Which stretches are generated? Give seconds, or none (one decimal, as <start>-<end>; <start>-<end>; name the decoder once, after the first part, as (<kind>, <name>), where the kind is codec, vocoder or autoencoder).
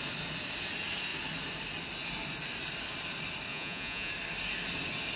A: 3.5-4.1 (vocoder, Vocos)